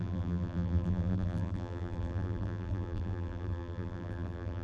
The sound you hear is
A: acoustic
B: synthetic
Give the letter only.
B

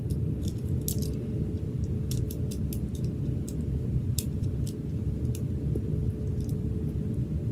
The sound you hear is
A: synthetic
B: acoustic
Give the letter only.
B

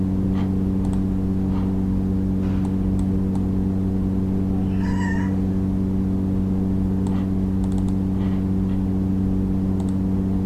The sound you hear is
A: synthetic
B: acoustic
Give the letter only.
B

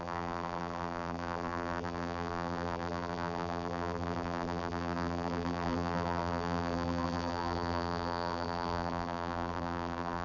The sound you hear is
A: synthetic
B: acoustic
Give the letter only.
A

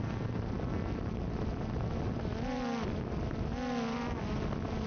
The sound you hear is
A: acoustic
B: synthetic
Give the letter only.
A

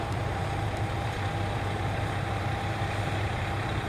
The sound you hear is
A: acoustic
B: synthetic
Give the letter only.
B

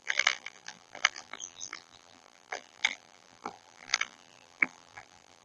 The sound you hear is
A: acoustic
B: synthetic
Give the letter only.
B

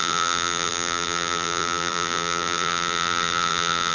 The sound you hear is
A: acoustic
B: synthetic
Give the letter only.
B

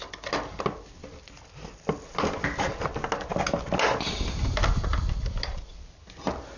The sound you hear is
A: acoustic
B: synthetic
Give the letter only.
A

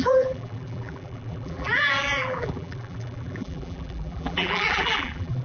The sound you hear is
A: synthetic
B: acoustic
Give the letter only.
A